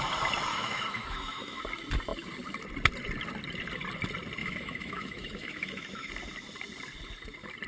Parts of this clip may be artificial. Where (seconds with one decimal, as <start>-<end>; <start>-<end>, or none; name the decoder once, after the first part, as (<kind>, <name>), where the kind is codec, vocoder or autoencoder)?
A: 0.5-1.6 (autoencoder, DAC-VAE); 4.4-6.1